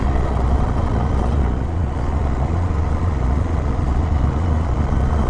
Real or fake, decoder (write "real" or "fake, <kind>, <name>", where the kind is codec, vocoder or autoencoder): fake, vocoder, Vocos